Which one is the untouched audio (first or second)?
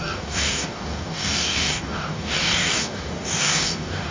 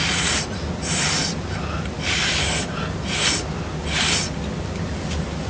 second